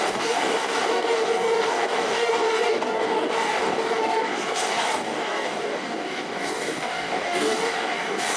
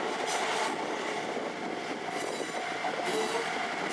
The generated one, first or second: first